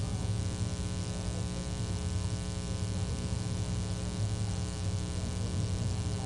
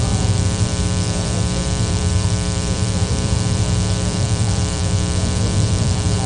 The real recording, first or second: first